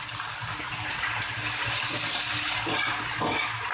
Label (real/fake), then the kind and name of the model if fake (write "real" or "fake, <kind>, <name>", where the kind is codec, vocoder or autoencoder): real